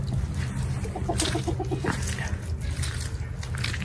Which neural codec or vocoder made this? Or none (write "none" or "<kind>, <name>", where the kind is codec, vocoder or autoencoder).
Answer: none